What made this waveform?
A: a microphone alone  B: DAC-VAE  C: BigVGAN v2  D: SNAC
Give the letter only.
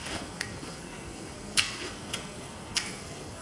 D